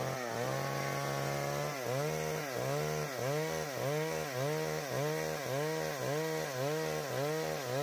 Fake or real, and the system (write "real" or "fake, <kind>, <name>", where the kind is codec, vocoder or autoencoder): real